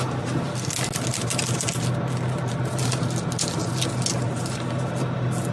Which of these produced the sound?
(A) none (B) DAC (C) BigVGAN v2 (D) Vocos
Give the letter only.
A